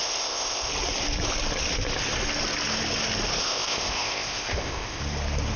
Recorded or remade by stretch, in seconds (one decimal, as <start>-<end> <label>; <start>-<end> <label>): 0.0-0.7 remade; 0.7-3.4 recorded; 3.4-5.0 remade; 5.0-5.6 recorded